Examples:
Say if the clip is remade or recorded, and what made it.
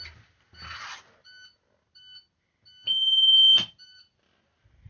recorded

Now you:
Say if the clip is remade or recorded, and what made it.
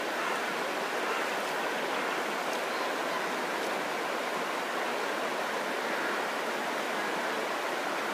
recorded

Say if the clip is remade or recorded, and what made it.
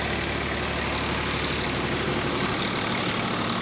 recorded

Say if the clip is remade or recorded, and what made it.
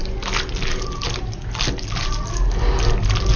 recorded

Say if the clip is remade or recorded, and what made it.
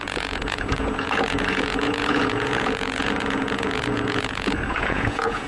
remade, vocoder, Vocos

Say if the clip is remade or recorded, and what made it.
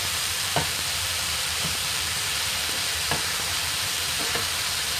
remade, vocoder, BigVGAN v2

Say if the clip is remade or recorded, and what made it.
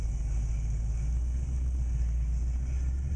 recorded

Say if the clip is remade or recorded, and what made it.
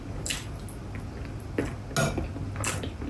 recorded